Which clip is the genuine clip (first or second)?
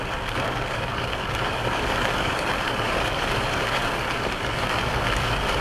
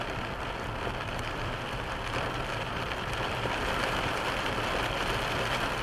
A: second